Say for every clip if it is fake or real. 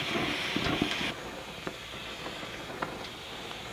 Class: real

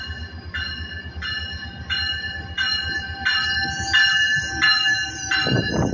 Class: real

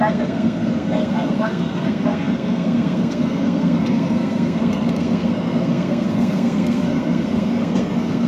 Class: fake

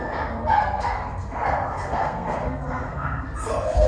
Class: fake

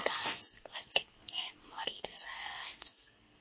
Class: fake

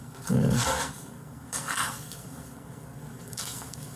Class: fake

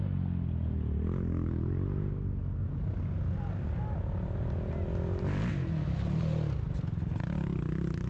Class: real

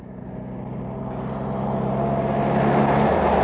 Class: real